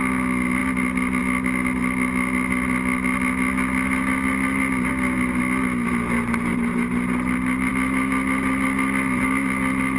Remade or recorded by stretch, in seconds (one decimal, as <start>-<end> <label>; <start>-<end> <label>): 0.0-10.0 recorded